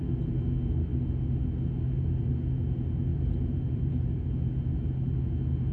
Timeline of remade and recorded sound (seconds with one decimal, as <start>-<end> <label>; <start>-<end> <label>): 0.0-3.1 recorded; 3.1-4.3 remade; 4.3-5.7 recorded